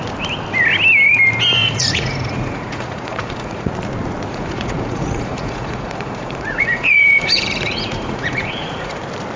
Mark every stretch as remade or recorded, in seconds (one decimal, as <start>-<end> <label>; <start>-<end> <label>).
0.0-1.6 recorded; 1.6-3.7 remade; 3.7-4.3 recorded; 4.3-9.0 remade; 9.0-9.4 recorded